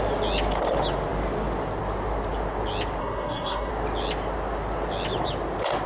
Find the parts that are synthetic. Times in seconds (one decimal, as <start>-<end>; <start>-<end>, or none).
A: 3.0-3.7